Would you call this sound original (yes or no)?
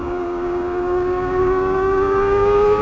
no